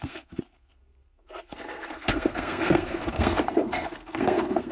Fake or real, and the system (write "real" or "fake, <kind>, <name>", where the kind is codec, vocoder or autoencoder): fake, codec, SNAC